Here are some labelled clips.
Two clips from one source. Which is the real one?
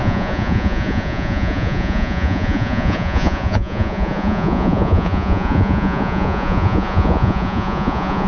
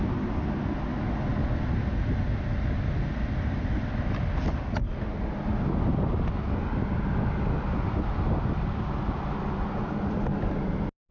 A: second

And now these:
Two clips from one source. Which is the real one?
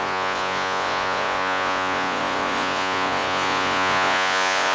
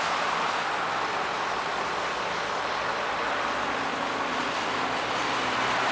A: second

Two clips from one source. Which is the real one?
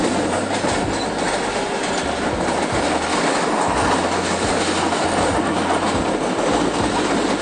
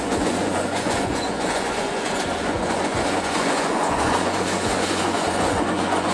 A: first